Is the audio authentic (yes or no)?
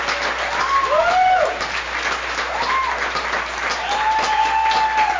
yes